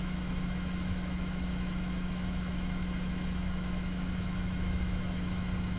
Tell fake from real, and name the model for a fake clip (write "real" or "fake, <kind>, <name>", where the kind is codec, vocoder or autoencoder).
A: fake, autoencoder, DAC-VAE